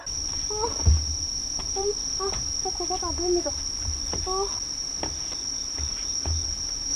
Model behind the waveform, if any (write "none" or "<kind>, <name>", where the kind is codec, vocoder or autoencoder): none